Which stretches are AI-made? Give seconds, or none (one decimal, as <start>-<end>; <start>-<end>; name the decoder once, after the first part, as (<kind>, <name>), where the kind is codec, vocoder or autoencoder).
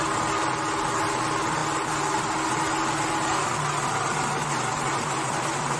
none